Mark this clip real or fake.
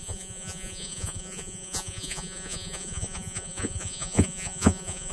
fake